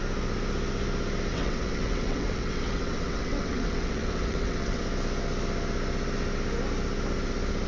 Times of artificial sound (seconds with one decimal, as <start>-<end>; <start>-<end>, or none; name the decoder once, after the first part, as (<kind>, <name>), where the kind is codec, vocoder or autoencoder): 1.3-4.8 (vocoder, WaveNeXt)